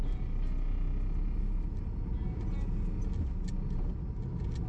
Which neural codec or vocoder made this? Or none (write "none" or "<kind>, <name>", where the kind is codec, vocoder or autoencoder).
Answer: none